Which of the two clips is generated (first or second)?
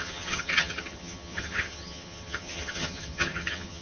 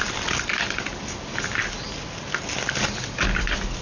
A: first